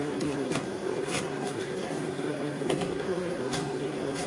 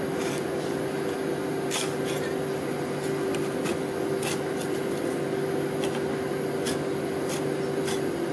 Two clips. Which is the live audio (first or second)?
second